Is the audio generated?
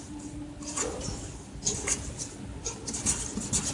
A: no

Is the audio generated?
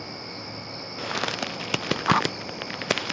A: no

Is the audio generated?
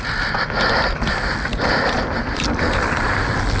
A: no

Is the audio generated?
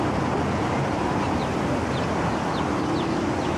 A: no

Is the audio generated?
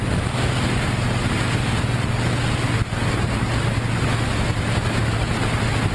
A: no